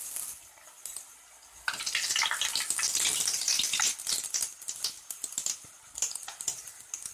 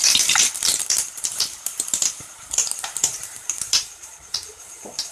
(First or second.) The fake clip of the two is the second